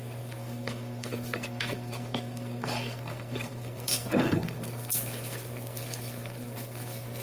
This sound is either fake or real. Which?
fake